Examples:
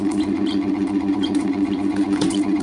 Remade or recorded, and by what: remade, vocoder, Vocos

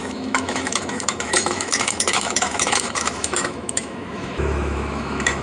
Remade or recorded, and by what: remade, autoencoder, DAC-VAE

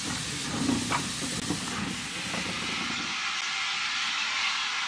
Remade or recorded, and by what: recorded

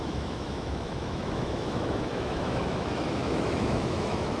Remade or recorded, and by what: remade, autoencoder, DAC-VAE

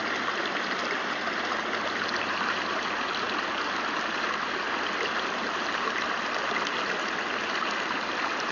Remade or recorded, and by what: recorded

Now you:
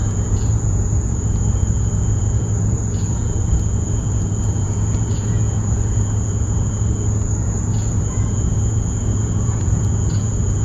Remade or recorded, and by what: remade, vocoder, Vocos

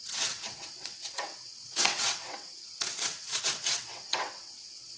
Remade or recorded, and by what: remade, vocoder, WaveNeXt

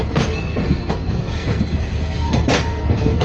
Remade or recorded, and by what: remade, codec, SNAC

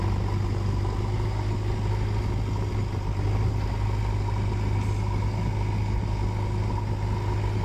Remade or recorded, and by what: recorded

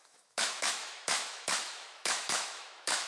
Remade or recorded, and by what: remade, autoencoder, DAC-VAE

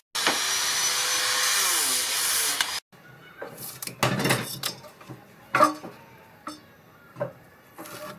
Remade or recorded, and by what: recorded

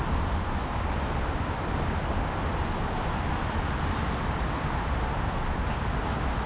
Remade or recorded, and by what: recorded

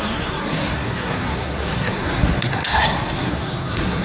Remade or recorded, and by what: remade, codec, SNAC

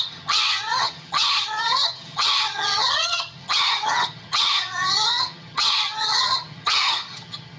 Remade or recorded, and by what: remade, vocoder, HiFi-GAN